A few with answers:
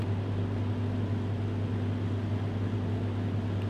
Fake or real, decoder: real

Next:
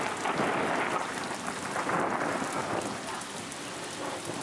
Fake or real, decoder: real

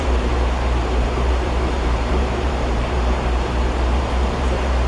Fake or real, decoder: fake, vocoder, BigVGAN v2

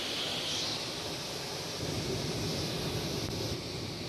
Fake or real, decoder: real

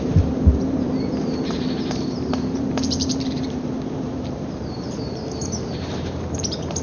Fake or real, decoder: fake, vocoder, BigVGAN v2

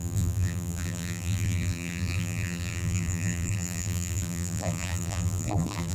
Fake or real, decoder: fake, vocoder, BigVGAN v2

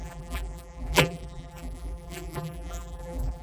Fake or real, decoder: fake, vocoder, BigVGAN v2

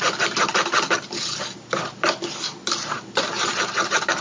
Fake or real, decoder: real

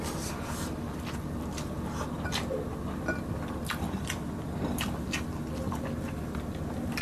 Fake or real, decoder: fake, vocoder, BigVGAN v2